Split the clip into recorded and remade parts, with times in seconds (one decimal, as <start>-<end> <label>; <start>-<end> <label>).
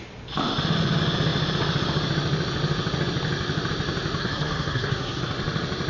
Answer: 0.0-4.2 recorded; 4.2-5.2 remade; 5.2-5.9 recorded